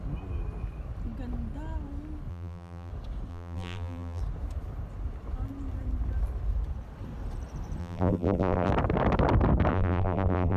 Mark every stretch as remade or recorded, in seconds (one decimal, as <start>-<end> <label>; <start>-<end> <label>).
0.0-2.3 recorded; 2.3-2.9 remade; 2.9-3.3 recorded; 3.3-4.2 remade; 4.2-7.8 recorded; 7.8-8.7 remade; 8.7-9.7 recorded; 9.7-10.6 remade